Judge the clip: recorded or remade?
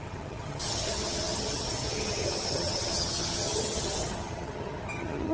remade